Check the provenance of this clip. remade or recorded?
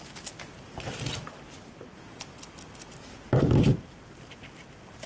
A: recorded